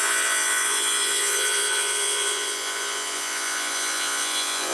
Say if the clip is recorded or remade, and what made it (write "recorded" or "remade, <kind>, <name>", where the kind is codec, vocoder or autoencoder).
remade, vocoder, Vocos